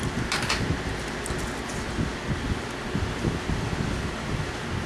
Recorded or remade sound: recorded